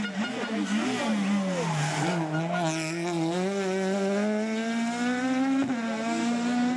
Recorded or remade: recorded